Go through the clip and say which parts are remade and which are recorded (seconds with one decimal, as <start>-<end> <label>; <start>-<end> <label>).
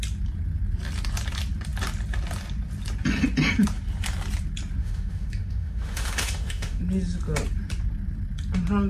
0.0-4.8 recorded; 4.8-6.8 remade; 6.8-8.9 recorded